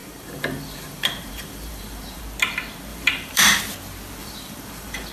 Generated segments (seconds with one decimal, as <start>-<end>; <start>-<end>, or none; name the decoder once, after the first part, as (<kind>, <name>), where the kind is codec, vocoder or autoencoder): 0.0-2.2 (vocoder, BigVGAN v2); 2.9-3.6; 4.2-5.1